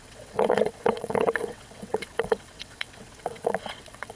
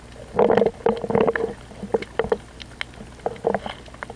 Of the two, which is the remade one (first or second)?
first